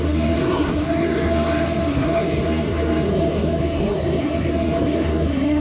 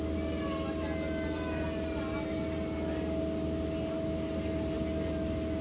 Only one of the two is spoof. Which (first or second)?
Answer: first